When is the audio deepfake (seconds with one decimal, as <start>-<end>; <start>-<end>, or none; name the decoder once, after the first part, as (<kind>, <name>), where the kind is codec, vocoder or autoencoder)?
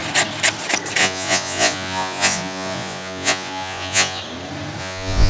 1.0-4.2 (vocoder, Vocos); 4.8-5.3